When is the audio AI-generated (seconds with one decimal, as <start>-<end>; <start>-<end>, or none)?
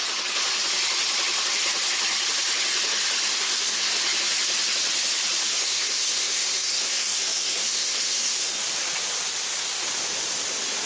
3.3-3.9; 5.5-8.6